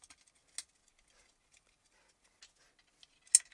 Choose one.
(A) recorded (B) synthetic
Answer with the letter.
A